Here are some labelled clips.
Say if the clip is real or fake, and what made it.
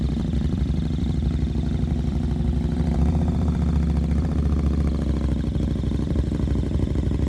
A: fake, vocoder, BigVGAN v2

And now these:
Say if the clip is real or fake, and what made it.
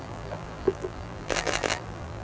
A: fake, vocoder, BigVGAN v2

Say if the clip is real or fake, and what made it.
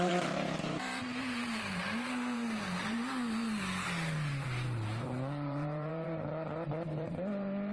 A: fake, vocoder, BigVGAN v2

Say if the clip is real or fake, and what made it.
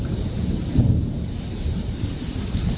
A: fake, vocoder, BigVGAN v2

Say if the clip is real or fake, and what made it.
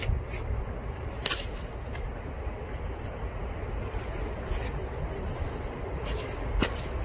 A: real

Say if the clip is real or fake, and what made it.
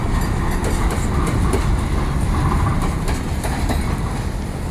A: real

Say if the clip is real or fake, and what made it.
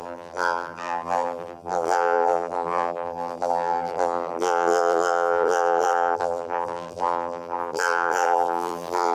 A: fake, vocoder, BigVGAN v2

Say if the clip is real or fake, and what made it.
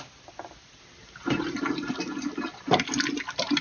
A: real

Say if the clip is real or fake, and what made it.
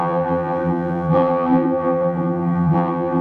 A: fake, vocoder, BigVGAN v2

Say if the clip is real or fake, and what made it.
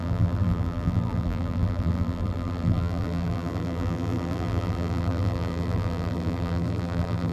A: fake, vocoder, BigVGAN v2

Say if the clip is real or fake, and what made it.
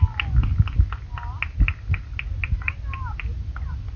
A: real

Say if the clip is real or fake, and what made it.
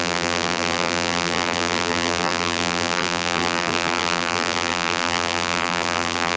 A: fake, vocoder, BigVGAN v2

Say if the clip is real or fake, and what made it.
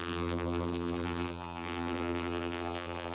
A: fake, vocoder, BigVGAN v2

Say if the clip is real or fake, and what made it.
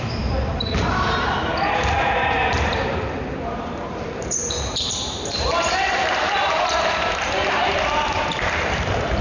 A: fake, vocoder, BigVGAN v2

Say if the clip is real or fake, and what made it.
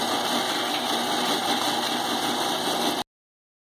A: real